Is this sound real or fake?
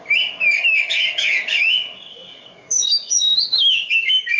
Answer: fake